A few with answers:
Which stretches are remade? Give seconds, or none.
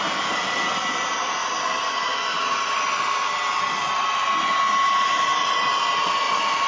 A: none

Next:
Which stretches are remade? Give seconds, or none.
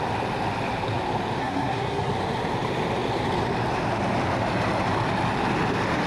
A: 1.4-2.1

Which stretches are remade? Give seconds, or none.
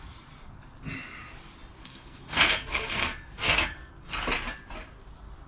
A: 1.8-3.9